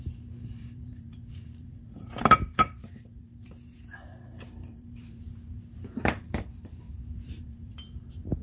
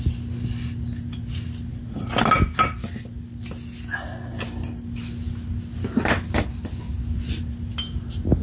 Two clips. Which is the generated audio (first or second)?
first